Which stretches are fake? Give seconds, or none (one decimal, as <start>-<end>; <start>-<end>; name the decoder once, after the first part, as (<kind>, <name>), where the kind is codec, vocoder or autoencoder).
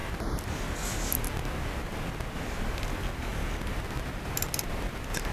none